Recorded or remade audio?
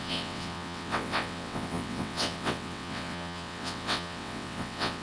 remade